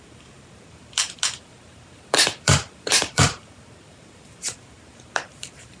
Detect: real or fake fake